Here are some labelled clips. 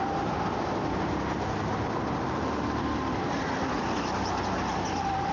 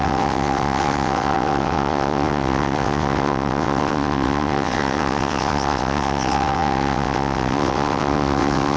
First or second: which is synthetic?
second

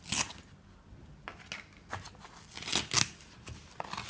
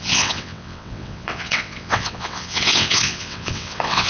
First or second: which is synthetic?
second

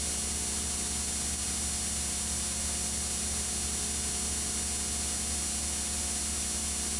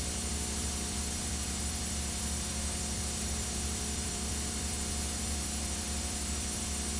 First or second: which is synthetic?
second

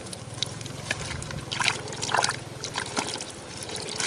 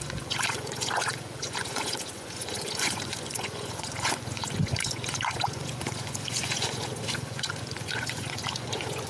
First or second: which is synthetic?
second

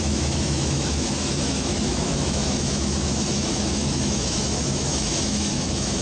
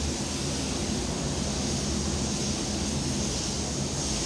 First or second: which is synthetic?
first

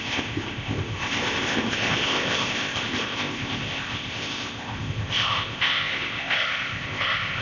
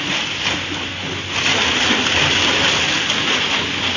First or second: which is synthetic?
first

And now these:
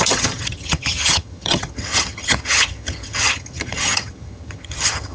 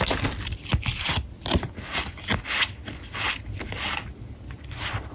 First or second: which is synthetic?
first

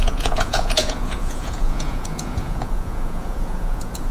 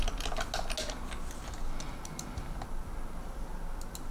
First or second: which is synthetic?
first